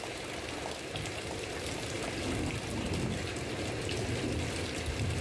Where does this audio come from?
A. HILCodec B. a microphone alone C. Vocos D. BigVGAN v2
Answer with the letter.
B